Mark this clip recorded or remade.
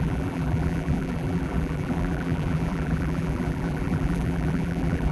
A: remade